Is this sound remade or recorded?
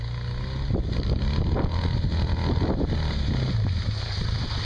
recorded